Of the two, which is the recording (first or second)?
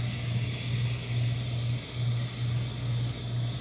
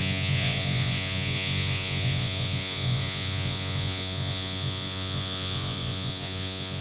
first